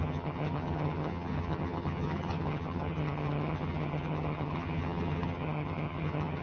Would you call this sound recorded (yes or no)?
no